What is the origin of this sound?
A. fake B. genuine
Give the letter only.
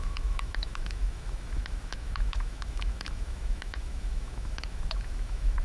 A